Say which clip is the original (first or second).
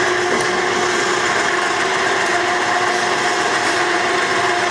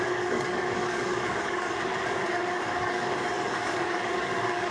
first